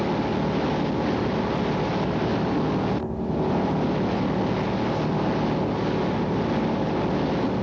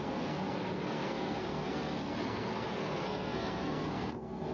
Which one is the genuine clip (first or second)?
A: first